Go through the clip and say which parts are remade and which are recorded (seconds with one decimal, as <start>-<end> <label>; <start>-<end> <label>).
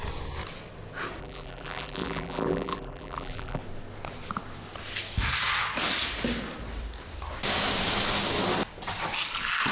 0.0-1.2 recorded; 1.2-3.6 remade; 3.6-9.7 recorded